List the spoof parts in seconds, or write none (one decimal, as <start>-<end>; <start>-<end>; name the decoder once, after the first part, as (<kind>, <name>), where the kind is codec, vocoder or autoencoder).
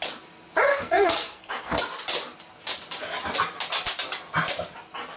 0.7-1.8 (codec, SNAC)